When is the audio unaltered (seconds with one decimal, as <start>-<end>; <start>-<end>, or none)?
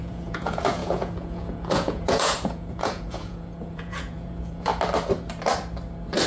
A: 4.7-6.3